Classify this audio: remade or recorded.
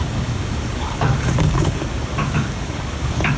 remade